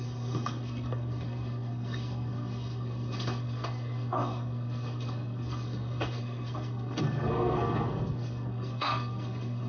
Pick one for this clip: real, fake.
fake